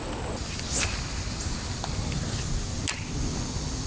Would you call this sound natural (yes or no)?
yes